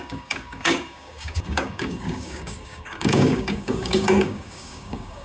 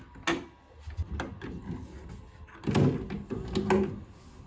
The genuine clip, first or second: second